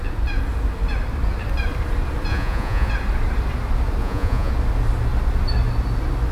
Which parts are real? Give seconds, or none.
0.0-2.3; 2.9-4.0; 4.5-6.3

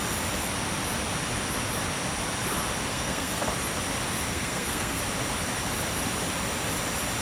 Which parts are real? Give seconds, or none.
0.0-2.9; 3.5-4.3; 5.0-7.2

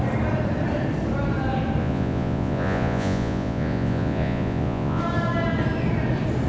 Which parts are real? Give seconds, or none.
0.0-1.8; 5.0-6.5

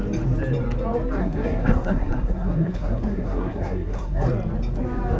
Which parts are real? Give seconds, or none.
0.0-1.2; 4.3-5.2

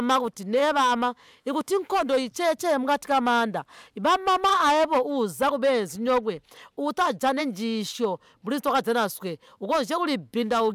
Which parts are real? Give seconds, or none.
0.0-0.6; 2.3-9.5

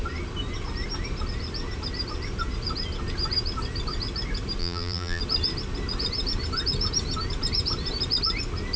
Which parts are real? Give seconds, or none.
0.0-4.6; 5.2-8.8

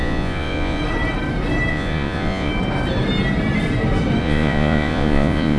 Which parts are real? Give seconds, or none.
0.8-1.7; 2.5-4.2